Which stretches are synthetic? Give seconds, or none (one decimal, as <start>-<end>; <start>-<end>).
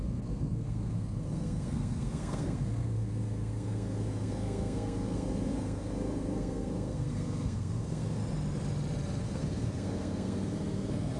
0.0-8.2; 9.2-11.2